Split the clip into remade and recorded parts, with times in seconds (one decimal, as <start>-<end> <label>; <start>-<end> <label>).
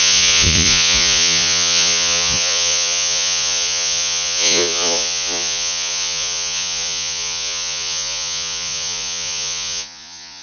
0.0-10.4 remade